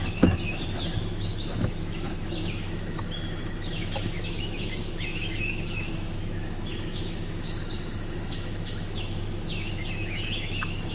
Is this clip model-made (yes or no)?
yes